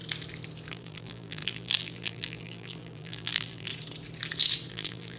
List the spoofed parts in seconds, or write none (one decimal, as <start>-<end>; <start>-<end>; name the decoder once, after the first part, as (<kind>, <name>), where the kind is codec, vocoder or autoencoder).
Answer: 0.7-3.7 (vocoder, BigVGAN v2); 4.7-5.2